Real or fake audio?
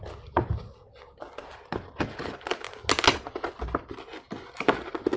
real